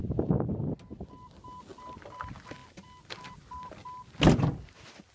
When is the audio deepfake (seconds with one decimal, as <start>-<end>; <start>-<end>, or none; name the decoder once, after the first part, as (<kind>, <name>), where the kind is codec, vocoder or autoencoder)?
none